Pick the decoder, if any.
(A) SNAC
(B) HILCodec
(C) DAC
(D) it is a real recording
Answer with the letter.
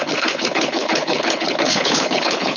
B